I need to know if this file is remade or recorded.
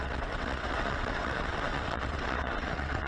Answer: remade